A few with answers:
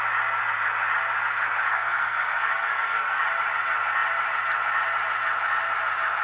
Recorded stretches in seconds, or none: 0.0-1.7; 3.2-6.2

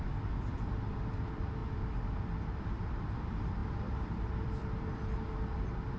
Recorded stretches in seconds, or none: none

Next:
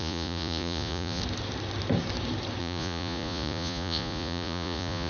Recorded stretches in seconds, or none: 1.2-2.6